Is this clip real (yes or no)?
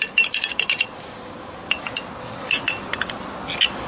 yes